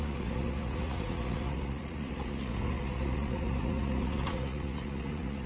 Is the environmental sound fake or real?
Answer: fake